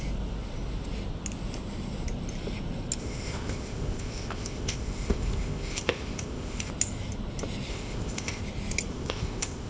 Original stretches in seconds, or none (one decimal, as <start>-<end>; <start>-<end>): 0.0-3.0; 6.7-7.7; 8.4-8.9